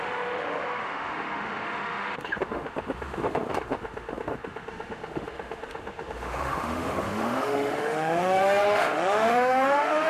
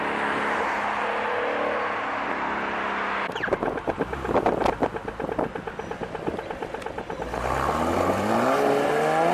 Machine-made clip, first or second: first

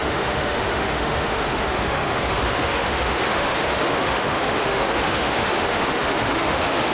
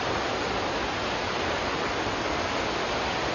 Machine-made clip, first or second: first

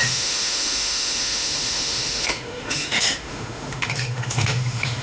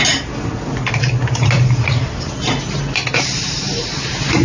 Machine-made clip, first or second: first